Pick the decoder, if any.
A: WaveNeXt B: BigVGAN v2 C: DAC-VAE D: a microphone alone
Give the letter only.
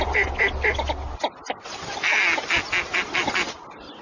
D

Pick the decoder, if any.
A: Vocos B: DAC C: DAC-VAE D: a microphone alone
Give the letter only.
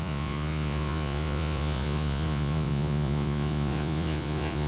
A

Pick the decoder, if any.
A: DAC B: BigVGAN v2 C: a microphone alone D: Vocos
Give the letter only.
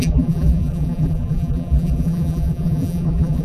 B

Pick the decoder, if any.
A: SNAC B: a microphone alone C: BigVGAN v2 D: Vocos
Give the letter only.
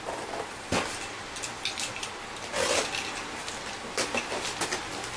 B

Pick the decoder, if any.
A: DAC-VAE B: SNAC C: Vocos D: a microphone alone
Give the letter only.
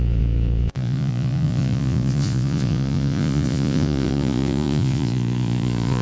C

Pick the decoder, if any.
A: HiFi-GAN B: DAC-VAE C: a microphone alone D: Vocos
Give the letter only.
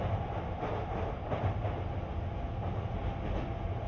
C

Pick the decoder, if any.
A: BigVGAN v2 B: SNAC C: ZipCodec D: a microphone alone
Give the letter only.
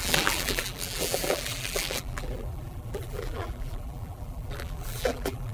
A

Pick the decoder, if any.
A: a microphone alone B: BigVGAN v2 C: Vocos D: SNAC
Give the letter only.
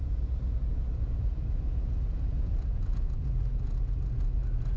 C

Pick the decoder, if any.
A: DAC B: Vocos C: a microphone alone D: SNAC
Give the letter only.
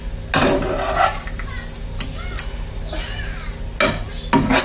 C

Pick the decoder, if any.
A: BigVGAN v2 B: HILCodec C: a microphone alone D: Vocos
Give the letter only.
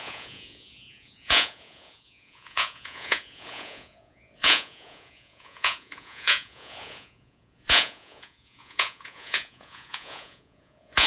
D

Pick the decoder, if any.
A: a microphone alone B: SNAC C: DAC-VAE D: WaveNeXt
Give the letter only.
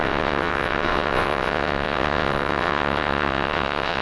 D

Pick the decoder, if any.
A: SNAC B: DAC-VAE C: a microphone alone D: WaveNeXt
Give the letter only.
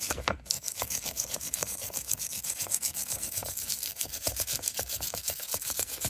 A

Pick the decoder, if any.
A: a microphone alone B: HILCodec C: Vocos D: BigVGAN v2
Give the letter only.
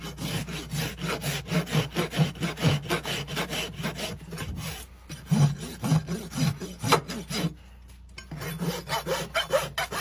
A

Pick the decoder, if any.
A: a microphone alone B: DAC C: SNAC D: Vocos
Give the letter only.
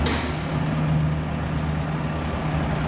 A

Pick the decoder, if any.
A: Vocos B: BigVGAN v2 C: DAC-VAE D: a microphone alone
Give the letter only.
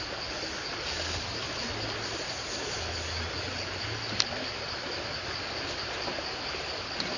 D